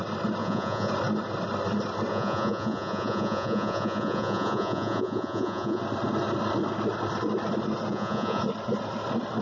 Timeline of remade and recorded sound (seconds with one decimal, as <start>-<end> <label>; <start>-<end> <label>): 0.0-0.4 recorded; 0.4-0.9 remade; 0.9-2.1 recorded; 2.1-5.8 remade; 5.8-7.9 recorded; 7.9-8.4 remade; 8.4-9.4 recorded